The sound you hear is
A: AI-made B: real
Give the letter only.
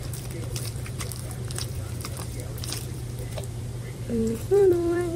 A